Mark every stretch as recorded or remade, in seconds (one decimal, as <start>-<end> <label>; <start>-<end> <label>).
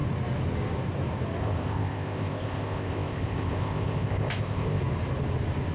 0.0-1.4 recorded; 1.4-4.8 remade; 4.8-5.7 recorded